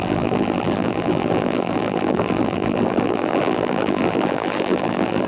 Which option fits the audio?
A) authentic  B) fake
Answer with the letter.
B